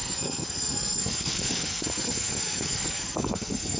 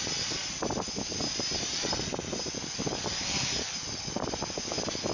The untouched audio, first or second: second